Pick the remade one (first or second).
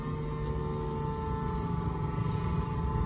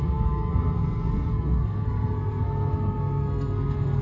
second